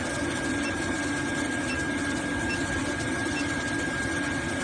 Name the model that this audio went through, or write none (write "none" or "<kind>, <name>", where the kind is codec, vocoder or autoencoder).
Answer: none